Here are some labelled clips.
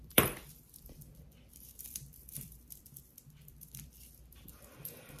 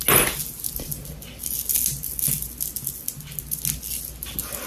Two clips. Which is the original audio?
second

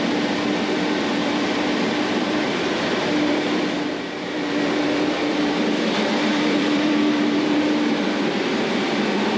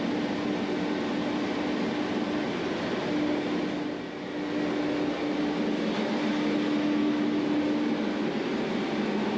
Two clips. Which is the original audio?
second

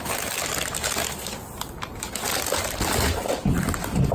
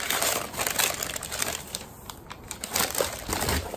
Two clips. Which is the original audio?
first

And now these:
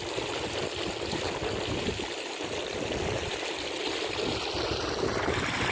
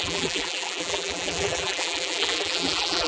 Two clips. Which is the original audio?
first